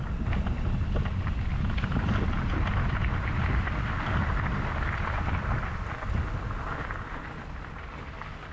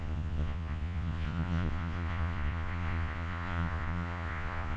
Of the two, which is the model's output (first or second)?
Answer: second